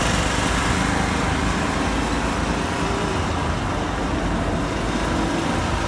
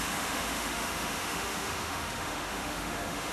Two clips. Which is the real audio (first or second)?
first